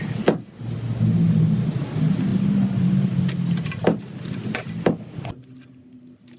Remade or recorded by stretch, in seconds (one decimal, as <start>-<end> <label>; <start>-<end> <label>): 0.0-6.4 recorded